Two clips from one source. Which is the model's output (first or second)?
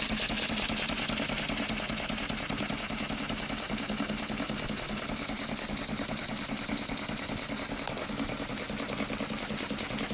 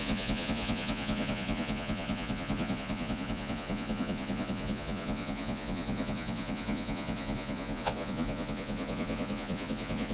second